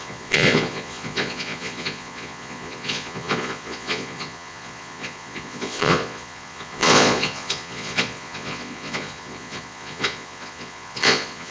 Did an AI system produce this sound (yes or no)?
yes